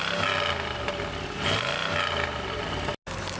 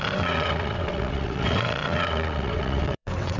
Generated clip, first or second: second